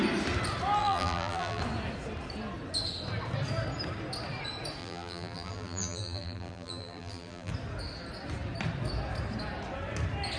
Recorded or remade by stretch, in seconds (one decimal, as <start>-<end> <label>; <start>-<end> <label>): 0.0-0.8 recorded; 0.8-1.6 remade; 1.6-4.8 recorded; 4.8-7.5 remade; 7.5-10.4 recorded